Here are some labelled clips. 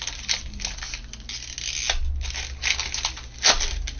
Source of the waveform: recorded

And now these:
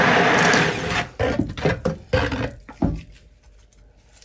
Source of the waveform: recorded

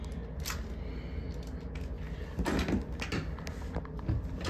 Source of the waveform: recorded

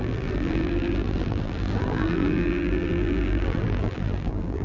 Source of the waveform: remade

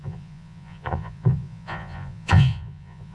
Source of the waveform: remade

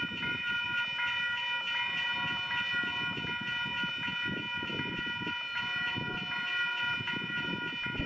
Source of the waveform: recorded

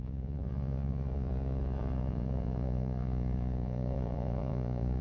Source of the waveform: remade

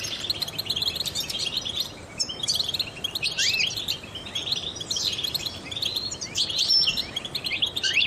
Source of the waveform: remade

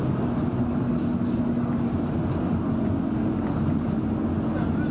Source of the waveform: recorded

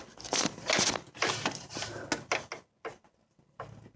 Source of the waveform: recorded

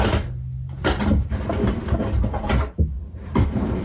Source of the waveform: recorded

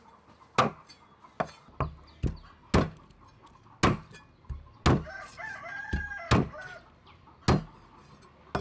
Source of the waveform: recorded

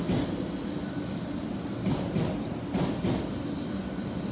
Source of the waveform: recorded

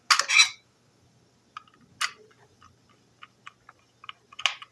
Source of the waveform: recorded